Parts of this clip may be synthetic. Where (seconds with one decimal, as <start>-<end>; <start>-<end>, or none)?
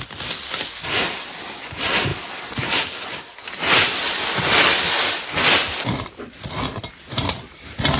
none